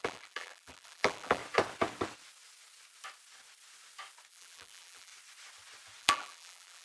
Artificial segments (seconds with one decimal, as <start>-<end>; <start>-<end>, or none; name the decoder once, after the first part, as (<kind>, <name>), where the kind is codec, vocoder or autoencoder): 0.0-1.4 (vocoder, BigVGAN v2); 4.3-5.1; 6.0-6.8